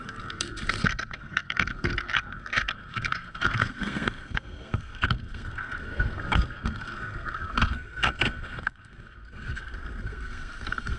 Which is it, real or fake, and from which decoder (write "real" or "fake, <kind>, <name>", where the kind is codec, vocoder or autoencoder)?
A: fake, codec, SNAC